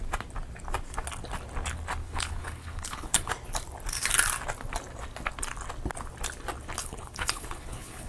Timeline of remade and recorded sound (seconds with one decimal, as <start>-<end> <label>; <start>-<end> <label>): 0.0-2.0 recorded; 2.0-3.3 remade; 3.3-6.8 recorded; 6.8-8.1 remade

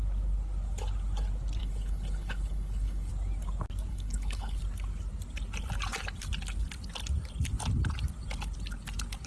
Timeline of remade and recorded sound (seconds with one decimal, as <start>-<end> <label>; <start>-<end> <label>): 0.0-1.6 recorded; 1.6-3.1 remade; 3.1-3.9 recorded; 3.9-4.6 remade; 4.6-9.3 recorded

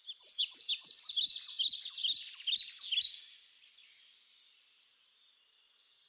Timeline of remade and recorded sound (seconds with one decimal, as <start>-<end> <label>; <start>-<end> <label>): 0.0-6.1 recorded